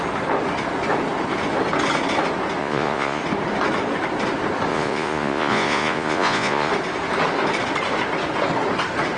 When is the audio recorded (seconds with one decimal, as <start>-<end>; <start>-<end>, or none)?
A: 0.0-2.6; 3.2-4.7; 6.7-9.2